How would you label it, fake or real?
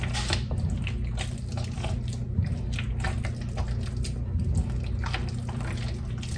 real